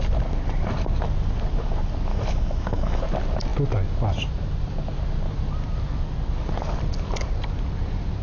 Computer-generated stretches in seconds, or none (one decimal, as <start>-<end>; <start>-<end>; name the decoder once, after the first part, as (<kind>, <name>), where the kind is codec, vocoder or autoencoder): 2.1-3.0 (autoencoder, DAC-VAE)